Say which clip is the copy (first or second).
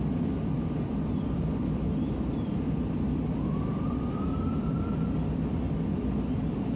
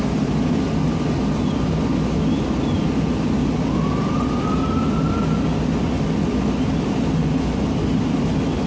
first